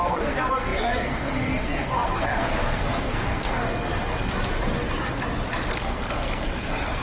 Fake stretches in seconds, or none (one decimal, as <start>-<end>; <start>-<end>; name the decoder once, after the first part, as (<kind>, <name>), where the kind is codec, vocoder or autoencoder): 0.0-3.6 (codec, SNAC); 5.7-7.0